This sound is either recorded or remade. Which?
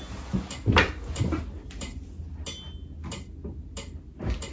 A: recorded